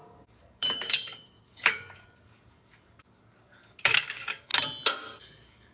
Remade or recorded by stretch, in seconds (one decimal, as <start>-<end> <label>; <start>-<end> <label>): 0.0-4.5 remade; 4.5-5.2 recorded; 5.2-5.7 remade